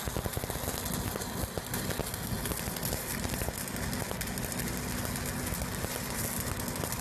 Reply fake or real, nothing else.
real